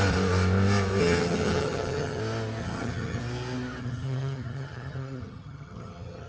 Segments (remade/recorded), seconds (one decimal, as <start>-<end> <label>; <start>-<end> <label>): 0.0-1.0 recorded; 1.0-2.2 remade; 2.2-2.6 recorded; 2.6-3.2 remade; 3.2-3.8 recorded; 3.8-6.3 remade